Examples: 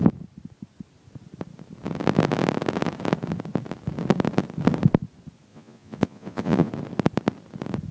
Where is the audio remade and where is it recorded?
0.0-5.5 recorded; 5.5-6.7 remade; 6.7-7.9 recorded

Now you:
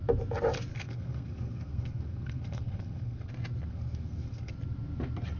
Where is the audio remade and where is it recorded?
0.0-0.7 recorded; 0.7-3.3 remade; 3.3-3.7 recorded; 3.7-4.5 remade; 4.5-5.4 recorded

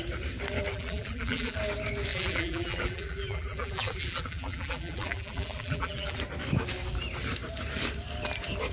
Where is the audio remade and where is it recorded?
0.0-0.7 recorded; 0.7-1.6 remade; 1.6-2.1 recorded; 2.1-6.2 remade; 6.2-8.7 recorded